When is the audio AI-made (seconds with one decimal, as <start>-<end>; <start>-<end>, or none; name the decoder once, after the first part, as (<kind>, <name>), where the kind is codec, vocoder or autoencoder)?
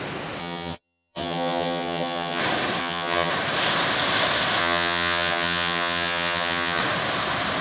0.4-2.4 (vocoder, HiFi-GAN); 2.8-3.3; 4.6-6.8